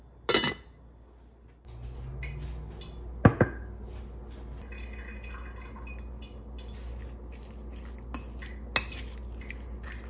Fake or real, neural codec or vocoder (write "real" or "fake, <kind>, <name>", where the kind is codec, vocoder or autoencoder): real